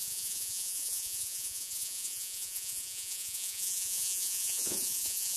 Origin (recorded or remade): remade